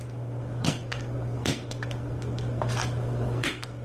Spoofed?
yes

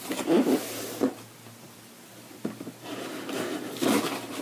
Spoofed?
no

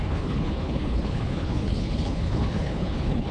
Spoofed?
yes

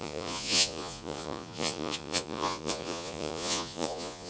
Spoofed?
yes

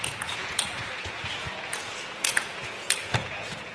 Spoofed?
yes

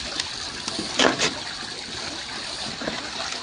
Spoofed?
no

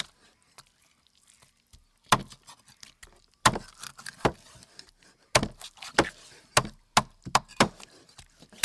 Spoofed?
no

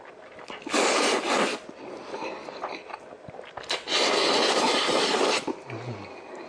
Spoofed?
no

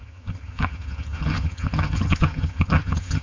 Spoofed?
yes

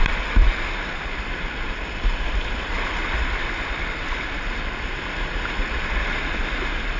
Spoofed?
no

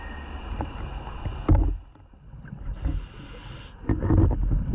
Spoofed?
no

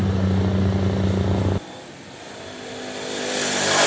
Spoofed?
no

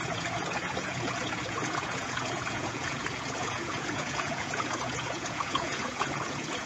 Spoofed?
yes